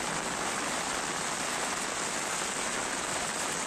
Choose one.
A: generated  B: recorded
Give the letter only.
B